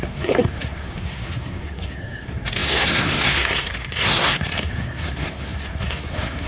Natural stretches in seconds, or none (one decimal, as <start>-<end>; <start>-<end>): none